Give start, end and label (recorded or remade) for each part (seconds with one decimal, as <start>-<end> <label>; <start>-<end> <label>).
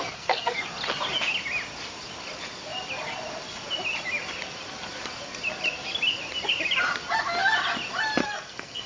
0.0-0.6 remade; 0.6-8.2 recorded; 8.2-8.9 remade